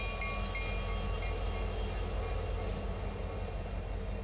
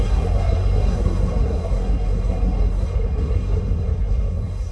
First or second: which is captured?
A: first